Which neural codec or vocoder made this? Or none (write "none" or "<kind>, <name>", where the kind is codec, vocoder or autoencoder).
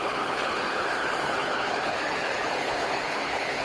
codec, HILCodec